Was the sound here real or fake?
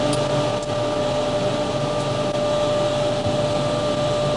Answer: real